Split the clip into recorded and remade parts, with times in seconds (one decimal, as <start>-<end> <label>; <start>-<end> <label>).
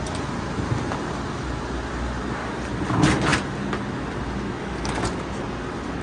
0.0-6.0 recorded